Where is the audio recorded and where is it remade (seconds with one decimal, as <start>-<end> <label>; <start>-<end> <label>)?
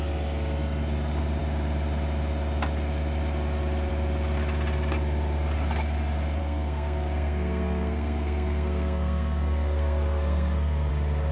0.0-6.4 recorded; 6.4-10.9 remade; 10.9-11.3 recorded